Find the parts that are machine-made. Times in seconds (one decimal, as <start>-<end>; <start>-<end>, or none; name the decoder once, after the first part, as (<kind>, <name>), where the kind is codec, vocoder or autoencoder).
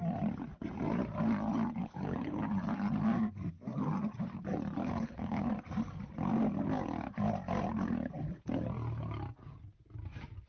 1.8-2.4 (codec, HILCodec); 4.8-5.5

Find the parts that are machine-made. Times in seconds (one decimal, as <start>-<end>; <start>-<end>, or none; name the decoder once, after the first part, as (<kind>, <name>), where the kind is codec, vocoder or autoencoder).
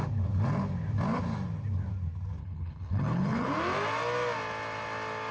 2.4-3.5 (codec, HILCodec)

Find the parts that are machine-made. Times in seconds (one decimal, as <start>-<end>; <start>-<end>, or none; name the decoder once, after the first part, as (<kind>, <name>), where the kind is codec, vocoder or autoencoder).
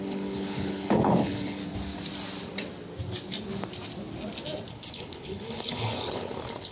0.0-1.6 (codec, HILCodec); 4.7-6.7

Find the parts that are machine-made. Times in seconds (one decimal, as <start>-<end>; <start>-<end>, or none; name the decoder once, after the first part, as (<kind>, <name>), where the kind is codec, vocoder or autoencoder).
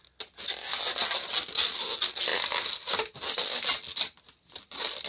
none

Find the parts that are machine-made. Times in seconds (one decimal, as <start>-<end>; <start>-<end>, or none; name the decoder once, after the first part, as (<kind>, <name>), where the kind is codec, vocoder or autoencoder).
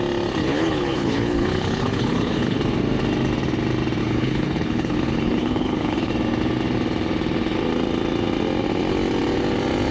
0.4-2.6 (codec, HILCodec); 4.0-6.1